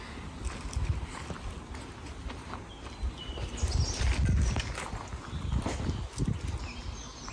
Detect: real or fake real